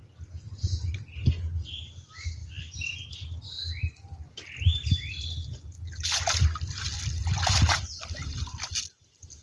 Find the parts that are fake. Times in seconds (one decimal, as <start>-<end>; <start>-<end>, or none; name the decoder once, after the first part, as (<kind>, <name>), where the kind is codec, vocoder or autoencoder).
none